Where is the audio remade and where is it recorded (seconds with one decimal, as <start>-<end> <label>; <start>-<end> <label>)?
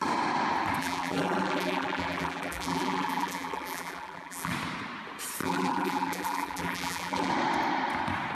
0.0-0.8 recorded; 0.8-4.5 remade; 4.5-5.4 recorded; 5.4-7.3 remade; 7.3-8.3 recorded